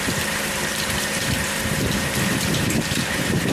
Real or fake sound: fake